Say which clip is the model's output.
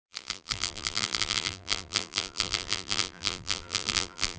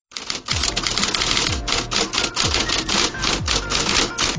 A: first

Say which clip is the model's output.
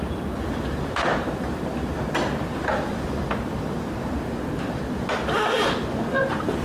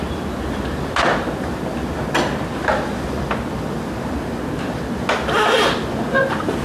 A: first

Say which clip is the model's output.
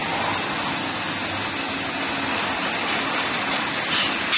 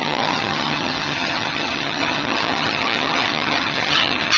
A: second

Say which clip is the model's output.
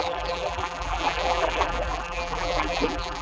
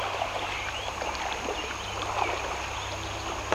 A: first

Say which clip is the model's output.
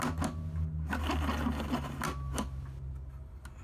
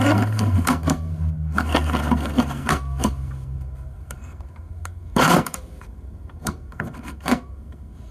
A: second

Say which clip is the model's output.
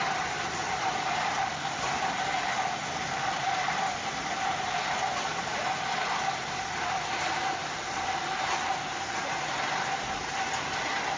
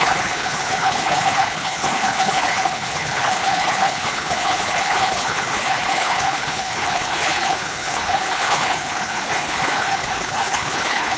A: second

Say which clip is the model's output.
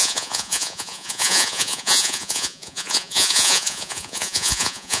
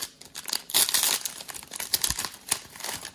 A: first